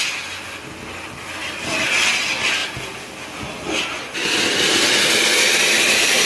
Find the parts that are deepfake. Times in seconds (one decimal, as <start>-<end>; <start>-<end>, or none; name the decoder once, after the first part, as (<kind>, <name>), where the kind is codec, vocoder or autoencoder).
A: none